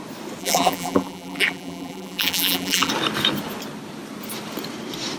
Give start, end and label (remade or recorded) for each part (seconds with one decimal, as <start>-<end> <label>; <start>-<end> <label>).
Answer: 0.0-0.4 recorded; 0.4-2.9 remade; 2.9-5.2 recorded

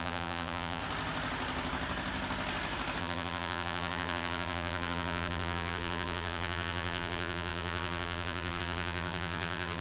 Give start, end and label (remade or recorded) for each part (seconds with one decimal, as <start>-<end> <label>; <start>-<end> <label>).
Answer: 0.0-0.8 remade; 0.8-3.0 recorded; 3.0-9.8 remade

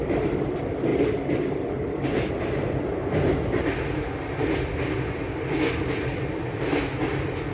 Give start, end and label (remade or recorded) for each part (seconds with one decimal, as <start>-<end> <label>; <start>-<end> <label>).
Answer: 0.0-7.5 recorded

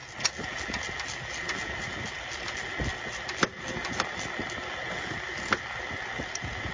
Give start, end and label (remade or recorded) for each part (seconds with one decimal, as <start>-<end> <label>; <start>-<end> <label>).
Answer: 0.0-6.7 recorded

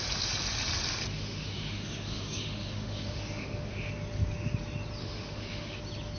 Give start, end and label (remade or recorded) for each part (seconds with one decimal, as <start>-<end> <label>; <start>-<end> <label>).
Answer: 0.0-1.1 recorded; 1.1-3.9 remade; 3.9-5.0 recorded; 5.0-5.8 remade; 5.8-6.2 recorded